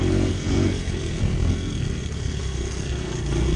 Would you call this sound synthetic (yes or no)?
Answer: yes